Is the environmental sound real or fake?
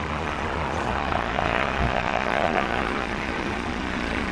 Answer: fake